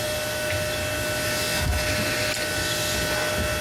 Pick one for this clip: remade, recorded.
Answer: recorded